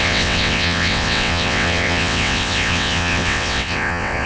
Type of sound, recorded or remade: remade